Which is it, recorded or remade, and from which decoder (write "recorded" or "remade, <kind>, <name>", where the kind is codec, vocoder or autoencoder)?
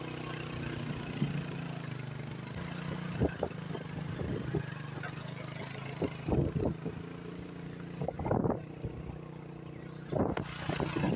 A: recorded